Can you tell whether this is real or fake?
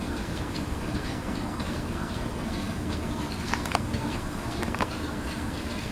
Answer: fake